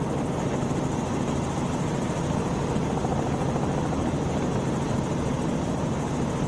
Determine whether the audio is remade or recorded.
recorded